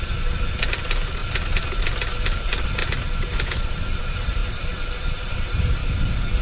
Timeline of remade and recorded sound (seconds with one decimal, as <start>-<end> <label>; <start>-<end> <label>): 0.0-1.2 remade; 1.2-2.2 recorded; 2.2-2.8 remade; 2.8-4.0 recorded; 4.0-4.4 remade; 4.4-5.3 recorded; 5.3-5.8 remade; 5.8-6.4 recorded